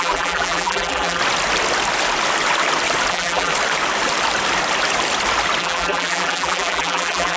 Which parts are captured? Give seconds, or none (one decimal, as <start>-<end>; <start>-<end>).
1.2-3.1; 3.5-5.6